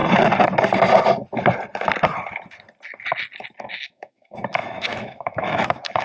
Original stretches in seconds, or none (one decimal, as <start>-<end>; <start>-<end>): 0.0-3.6